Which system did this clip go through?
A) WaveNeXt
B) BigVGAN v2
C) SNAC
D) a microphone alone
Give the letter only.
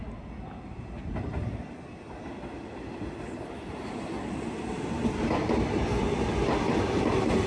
D